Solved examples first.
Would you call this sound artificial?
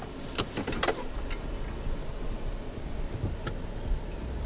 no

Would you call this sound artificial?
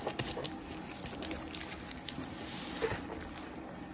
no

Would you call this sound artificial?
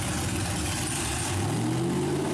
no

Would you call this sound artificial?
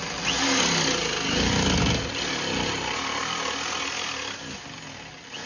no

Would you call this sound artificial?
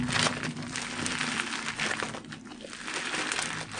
no